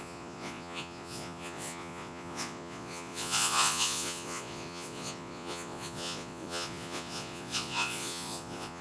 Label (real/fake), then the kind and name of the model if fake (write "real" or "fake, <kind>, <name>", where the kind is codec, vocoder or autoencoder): fake, vocoder, Vocos